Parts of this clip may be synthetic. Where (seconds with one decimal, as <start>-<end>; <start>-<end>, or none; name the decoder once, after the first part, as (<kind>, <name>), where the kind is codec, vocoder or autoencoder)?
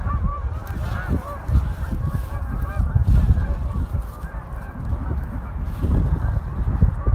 4.9-5.8 (autoencoder, DAC-VAE)